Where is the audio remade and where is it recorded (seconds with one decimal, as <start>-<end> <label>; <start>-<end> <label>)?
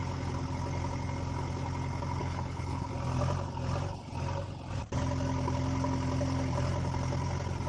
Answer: 0.0-2.2 recorded; 2.2-2.9 remade; 2.9-7.7 recorded